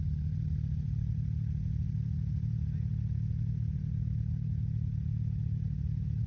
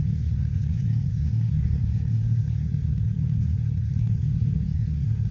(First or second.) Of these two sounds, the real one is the first